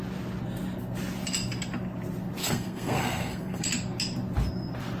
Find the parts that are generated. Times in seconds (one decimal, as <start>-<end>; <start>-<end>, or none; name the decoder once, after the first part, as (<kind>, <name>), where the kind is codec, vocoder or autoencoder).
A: 2.4-3.7 (codec, SNAC)